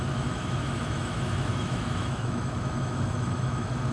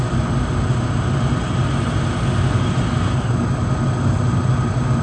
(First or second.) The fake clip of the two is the first